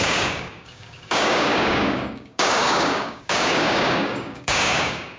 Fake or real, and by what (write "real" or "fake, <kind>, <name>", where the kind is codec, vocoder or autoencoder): fake, codec, DAC